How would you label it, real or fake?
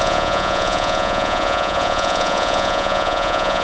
fake